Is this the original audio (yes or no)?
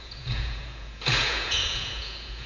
no